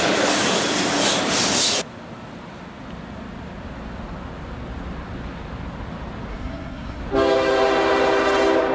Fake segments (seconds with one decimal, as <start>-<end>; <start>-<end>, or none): 6.3-7.0